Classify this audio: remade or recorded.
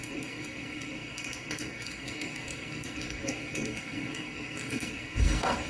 remade